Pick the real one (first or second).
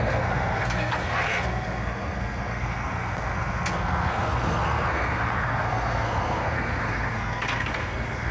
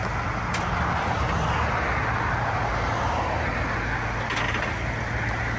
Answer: second